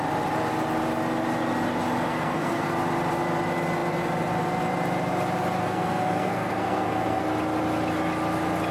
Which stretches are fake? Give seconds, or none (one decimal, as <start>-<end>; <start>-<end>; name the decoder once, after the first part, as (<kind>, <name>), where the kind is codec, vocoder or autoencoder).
2.1-2.7 (codec, SNAC); 5.6-7.2